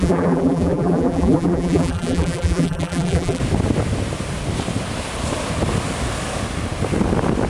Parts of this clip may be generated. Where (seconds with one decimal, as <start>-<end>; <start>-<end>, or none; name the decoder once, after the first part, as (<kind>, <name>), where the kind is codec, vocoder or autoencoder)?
0.0-3.4 (vocoder, BigVGAN v2)